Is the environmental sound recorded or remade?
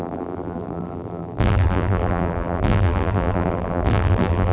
remade